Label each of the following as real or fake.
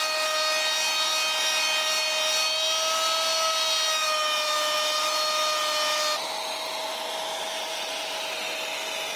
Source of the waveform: real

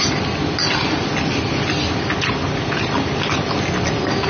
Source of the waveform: real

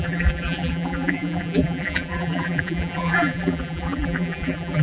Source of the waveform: fake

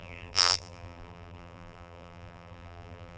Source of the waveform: fake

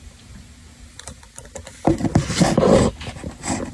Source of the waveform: real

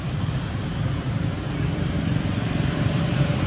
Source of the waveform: fake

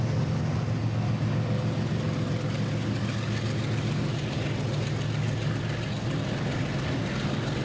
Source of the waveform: real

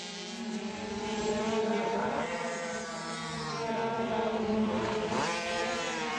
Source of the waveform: fake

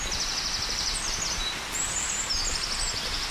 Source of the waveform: real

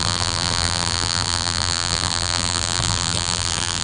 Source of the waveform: fake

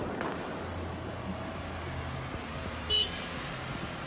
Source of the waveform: real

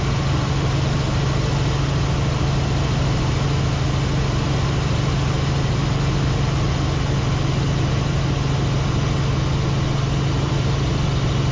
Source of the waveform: real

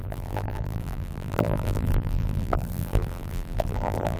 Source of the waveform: fake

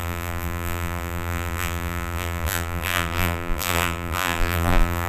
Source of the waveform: fake